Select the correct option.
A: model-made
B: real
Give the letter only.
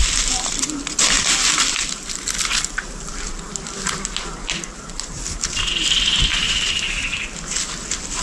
B